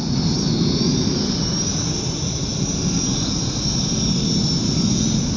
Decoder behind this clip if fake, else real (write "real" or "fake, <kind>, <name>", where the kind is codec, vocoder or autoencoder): real